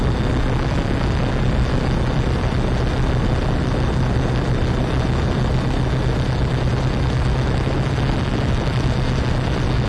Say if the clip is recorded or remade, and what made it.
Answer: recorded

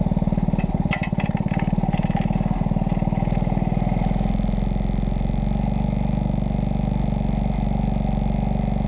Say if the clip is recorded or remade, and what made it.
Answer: recorded